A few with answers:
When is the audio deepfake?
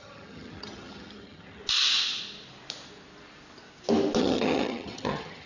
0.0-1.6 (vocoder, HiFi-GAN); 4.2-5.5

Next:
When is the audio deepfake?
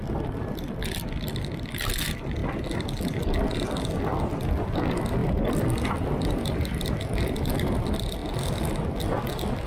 5.2-7.1 (vocoder, BigVGAN v2)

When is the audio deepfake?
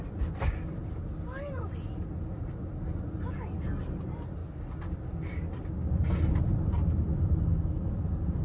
none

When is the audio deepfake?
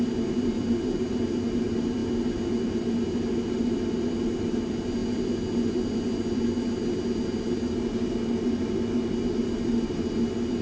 none